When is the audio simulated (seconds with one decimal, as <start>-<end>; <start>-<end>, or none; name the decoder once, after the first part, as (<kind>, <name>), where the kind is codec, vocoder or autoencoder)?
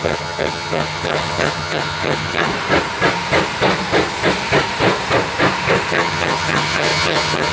0.0-2.5 (vocoder, HiFi-GAN); 5.9-7.5